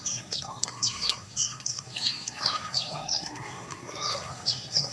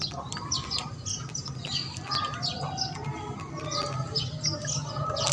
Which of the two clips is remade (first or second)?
first